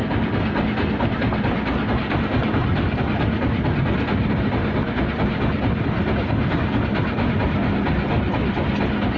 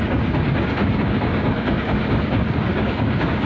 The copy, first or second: second